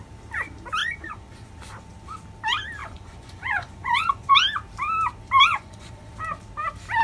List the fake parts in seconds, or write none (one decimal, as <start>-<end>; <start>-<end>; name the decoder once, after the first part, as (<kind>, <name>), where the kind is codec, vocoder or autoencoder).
0.8-1.5 (vocoder, Vocos); 2.8-4.3; 5.5-6.1